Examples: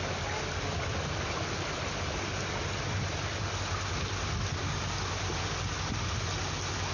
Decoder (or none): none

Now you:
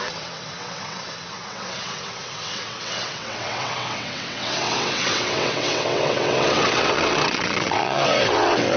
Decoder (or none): vocoder, WaveNeXt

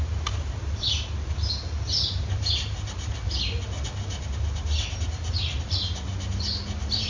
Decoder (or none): none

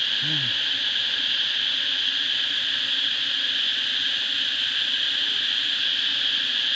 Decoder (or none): none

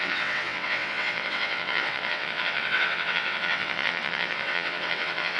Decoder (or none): vocoder, WaveNeXt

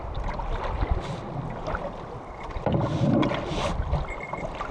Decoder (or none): none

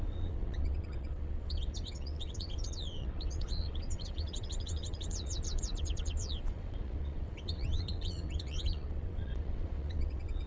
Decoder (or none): vocoder, WaveNeXt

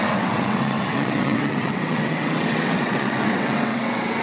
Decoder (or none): vocoder, WaveNeXt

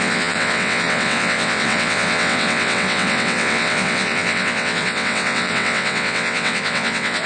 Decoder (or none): vocoder, WaveNeXt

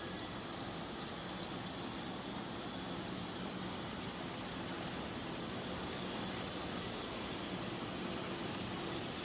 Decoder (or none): none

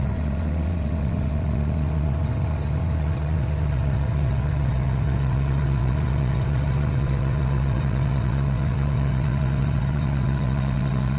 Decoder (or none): vocoder, WaveNeXt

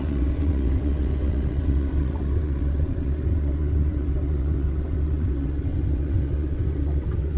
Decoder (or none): vocoder, WaveNeXt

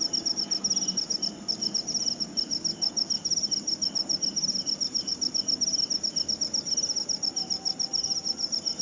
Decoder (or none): none